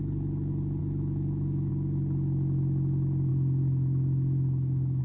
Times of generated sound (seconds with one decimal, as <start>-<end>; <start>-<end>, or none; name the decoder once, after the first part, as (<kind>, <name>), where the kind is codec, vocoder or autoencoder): 0.8-1.7 (autoencoder, DAC-VAE); 3.3-5.0